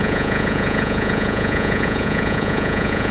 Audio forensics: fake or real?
fake